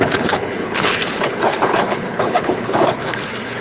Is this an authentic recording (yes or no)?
no